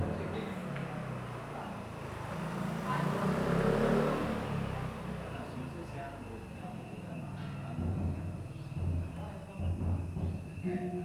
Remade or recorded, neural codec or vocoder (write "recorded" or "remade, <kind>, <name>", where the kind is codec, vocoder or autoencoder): recorded